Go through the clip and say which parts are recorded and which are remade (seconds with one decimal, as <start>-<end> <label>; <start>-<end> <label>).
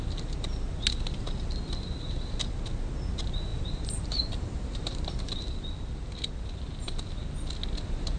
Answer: 0.0-3.5 recorded; 3.5-5.1 remade; 5.1-8.2 recorded